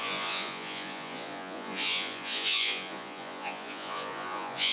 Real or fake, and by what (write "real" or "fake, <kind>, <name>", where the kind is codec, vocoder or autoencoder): fake, vocoder, Vocos